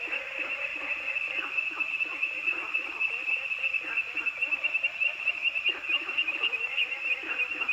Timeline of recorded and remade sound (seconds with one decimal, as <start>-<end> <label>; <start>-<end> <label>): 0.0-0.7 remade; 0.7-5.3 recorded; 5.3-7.7 remade